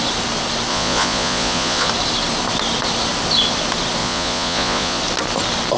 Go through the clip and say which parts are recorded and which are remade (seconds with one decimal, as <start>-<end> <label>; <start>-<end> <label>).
0.0-0.7 recorded; 0.7-1.9 remade; 1.9-4.0 recorded; 4.0-5.0 remade; 5.0-5.8 recorded